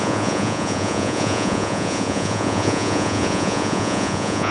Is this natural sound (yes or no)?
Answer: no